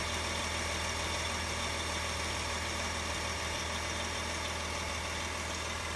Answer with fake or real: real